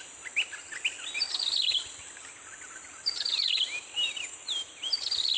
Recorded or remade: recorded